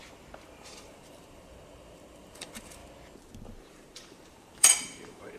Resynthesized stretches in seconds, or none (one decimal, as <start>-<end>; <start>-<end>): 0.6-2.8; 3.6-5.4